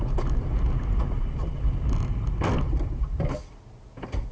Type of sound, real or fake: real